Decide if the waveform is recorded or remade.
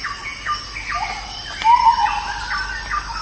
recorded